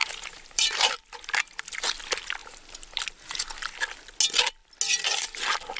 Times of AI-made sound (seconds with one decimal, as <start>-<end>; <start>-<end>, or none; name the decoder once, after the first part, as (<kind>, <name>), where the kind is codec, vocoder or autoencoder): 0.0-0.9 (vocoder, BigVGAN v2)